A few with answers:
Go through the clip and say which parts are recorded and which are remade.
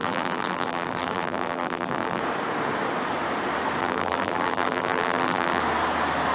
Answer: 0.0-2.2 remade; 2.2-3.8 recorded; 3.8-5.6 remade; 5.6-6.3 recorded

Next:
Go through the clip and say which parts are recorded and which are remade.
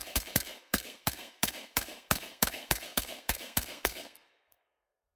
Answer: 0.0-5.2 remade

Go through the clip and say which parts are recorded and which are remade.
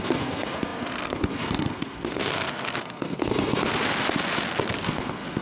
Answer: 0.0-3.7 remade; 3.7-4.6 recorded; 4.6-5.4 remade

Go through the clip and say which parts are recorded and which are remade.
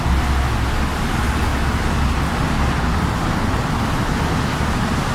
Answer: 0.0-5.1 recorded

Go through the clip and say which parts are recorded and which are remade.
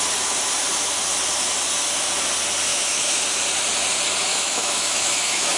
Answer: 0.0-2.7 recorded; 2.7-3.2 remade; 3.2-4.3 recorded; 4.3-5.6 remade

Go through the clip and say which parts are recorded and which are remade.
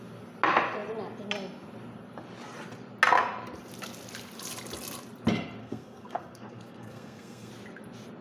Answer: 0.0-5.6 recorded; 5.6-7.5 remade; 7.5-8.2 recorded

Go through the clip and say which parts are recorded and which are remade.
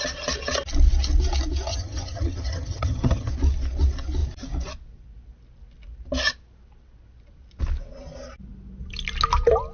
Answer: 0.0-1.7 recorded; 1.7-3.3 remade; 3.3-9.7 recorded